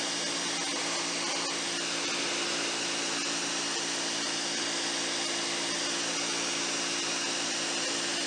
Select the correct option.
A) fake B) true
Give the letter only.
B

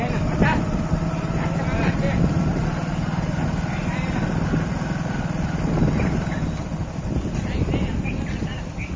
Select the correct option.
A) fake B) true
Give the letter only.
B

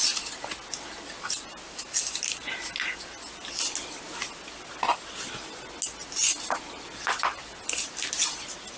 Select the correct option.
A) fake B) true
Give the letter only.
B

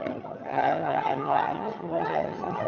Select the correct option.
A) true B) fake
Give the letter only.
B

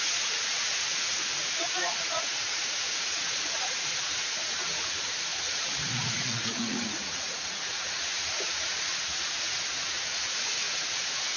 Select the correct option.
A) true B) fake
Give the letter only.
B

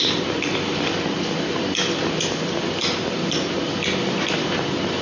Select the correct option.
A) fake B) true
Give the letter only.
A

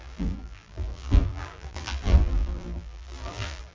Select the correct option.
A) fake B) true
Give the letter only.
A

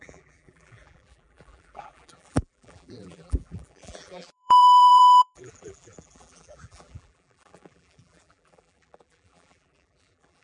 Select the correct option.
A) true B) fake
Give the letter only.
B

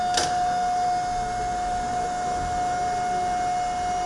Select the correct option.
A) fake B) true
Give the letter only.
B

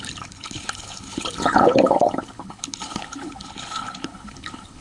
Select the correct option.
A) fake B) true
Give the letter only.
A